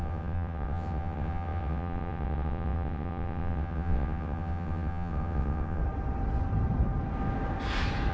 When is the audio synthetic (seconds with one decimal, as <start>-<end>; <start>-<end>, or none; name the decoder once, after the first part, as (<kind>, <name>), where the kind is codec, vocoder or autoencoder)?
0.0-5.8 (vocoder, WaveNeXt)